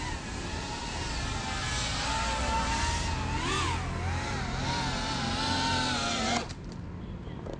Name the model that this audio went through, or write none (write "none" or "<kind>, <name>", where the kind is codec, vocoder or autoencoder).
none